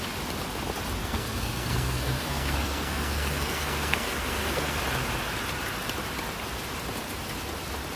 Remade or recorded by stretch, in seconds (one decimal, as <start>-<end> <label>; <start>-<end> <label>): 0.0-1.0 recorded; 1.0-4.8 remade; 4.8-8.0 recorded